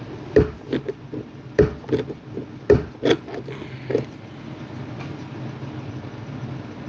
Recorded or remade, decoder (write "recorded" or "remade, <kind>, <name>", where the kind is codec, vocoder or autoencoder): recorded